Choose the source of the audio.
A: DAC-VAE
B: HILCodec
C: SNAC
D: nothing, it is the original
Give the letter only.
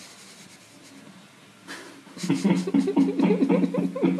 D